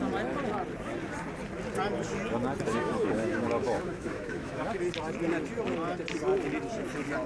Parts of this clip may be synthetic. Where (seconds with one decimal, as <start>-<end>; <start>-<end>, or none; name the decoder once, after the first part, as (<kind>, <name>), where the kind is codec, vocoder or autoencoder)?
2.7-4.8 (autoencoder, DAC-VAE)